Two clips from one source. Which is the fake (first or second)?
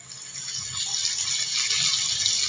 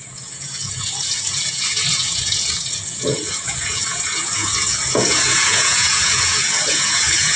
second